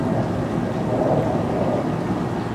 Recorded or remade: recorded